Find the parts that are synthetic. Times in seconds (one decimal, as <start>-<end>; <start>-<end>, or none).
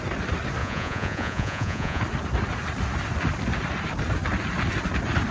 0.6-2.0